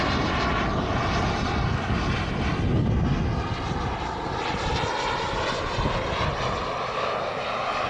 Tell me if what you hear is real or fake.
real